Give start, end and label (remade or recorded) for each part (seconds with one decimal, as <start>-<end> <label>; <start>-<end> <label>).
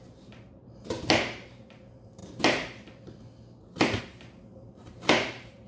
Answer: 0.0-2.2 remade; 2.2-4.0 recorded; 4.0-5.7 remade